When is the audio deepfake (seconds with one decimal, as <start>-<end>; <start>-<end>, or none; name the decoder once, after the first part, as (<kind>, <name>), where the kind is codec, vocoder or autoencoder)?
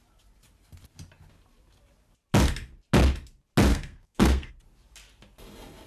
3.7-4.5 (codec, SNAC)